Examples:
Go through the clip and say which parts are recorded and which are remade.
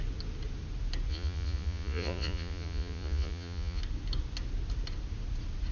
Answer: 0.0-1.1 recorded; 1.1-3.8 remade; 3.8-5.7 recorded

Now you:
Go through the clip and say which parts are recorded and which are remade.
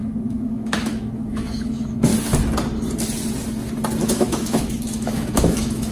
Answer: 0.0-2.1 remade; 2.1-4.1 recorded; 4.1-5.9 remade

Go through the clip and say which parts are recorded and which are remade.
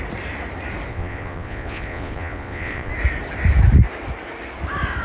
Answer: 0.0-0.9 recorded; 0.9-2.9 remade; 2.9-5.0 recorded